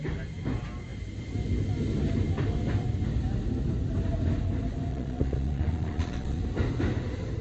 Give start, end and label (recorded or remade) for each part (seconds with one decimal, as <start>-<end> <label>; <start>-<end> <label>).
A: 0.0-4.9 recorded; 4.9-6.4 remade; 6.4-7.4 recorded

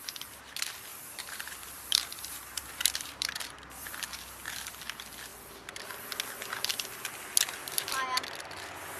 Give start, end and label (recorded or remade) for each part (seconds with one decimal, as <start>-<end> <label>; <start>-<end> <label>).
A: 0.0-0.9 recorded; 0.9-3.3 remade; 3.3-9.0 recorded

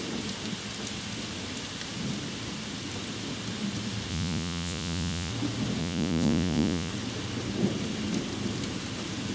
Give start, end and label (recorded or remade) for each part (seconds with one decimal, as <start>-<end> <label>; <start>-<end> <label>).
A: 0.0-4.1 recorded; 4.1-5.3 remade; 5.3-5.8 recorded; 5.8-6.9 remade; 6.9-9.3 recorded

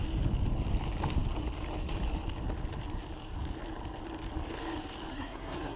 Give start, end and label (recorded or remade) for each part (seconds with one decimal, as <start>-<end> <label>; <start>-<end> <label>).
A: 0.0-5.1 recorded; 5.1-5.8 remade

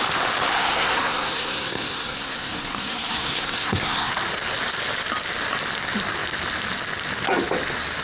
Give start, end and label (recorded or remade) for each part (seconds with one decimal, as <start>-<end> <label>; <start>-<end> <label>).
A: 0.0-0.5 recorded; 0.5-4.1 remade; 4.1-8.0 recorded